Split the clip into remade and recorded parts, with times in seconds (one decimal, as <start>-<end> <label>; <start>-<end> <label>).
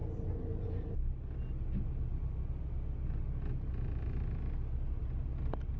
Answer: 0.0-5.8 recorded